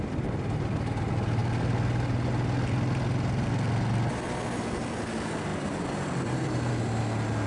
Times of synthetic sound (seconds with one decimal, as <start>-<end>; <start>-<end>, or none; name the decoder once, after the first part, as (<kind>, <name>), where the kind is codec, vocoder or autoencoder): 5.5-6.7 (vocoder, BigVGAN v2)